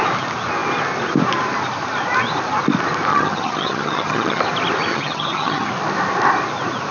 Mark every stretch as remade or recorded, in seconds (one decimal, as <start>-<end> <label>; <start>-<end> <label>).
0.0-3.1 recorded; 3.1-4.4 remade; 4.4-4.9 recorded; 4.9-5.7 remade; 5.7-6.9 recorded